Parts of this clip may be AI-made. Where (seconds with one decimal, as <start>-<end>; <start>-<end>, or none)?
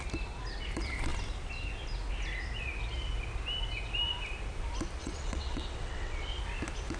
5.0-6.4